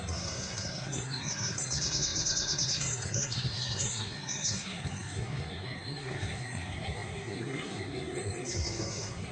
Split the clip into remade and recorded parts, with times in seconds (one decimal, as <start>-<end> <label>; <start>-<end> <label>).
0.0-9.3 remade